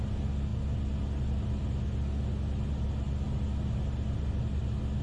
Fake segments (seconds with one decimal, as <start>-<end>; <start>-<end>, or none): none